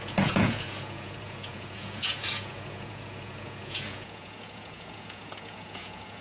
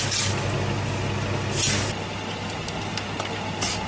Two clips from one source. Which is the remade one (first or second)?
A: first